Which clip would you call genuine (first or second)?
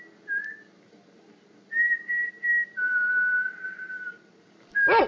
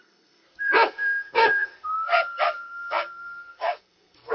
first